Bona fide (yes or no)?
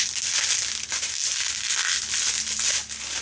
yes